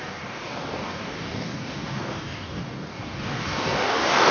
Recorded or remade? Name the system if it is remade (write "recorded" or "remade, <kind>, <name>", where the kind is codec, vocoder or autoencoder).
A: remade, codec, DAC